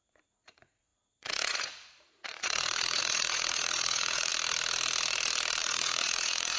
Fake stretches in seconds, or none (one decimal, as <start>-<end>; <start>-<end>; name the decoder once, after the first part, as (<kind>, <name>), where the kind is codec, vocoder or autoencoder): 0.0-4.3 (vocoder, Vocos); 5.6-6.6